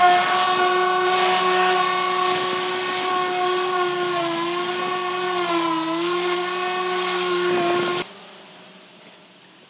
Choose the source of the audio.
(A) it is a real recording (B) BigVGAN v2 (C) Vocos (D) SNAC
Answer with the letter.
A